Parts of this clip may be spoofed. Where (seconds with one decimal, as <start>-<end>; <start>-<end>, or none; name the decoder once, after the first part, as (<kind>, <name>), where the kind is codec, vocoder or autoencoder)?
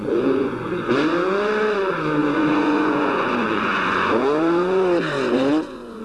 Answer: 0.0-6.0 (vocoder, Vocos)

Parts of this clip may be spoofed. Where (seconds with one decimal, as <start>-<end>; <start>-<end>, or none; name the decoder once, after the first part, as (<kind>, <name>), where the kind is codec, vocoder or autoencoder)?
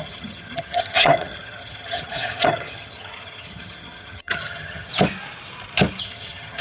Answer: 0.0-4.9 (vocoder, HiFi-GAN); 6.0-6.6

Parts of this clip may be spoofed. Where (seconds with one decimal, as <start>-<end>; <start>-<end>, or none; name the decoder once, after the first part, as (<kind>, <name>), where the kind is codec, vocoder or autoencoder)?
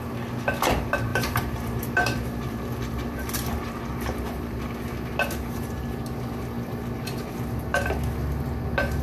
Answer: 1.1-4.6 (vocoder, BigVGAN v2)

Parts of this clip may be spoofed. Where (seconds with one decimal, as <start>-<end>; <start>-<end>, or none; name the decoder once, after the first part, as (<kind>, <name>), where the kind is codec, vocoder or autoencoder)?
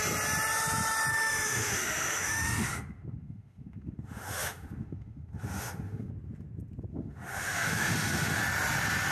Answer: 1.1-6.1 (autoencoder, DAC-VAE); 6.9-8.4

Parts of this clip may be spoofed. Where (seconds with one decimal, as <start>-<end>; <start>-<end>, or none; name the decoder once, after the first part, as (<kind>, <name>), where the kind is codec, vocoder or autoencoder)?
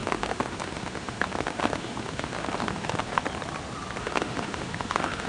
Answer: 0.0-3.2 (autoencoder, DAC-VAE); 4.0-5.3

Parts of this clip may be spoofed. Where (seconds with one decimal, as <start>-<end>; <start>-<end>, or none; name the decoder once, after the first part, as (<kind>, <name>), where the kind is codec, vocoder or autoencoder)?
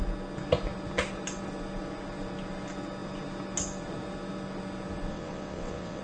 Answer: 5.1-6.0 (vocoder, WaveNeXt)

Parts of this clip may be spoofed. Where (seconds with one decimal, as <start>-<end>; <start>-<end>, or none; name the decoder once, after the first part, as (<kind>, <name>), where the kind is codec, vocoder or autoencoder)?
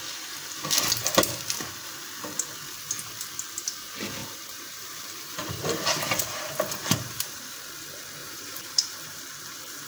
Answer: 4.2-7.4 (vocoder, BigVGAN v2); 8.2-9.2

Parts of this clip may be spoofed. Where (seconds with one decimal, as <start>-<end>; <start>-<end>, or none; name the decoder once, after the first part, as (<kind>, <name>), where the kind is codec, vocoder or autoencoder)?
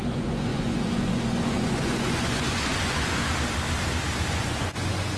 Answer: 0.0-3.3 (vocoder, Vocos); 4.3-5.2